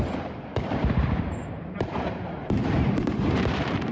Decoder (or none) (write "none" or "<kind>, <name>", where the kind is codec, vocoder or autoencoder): vocoder, BigVGAN v2